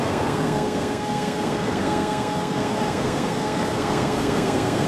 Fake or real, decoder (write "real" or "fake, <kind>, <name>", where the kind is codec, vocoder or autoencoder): fake, codec, SNAC